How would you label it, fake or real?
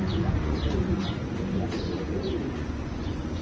fake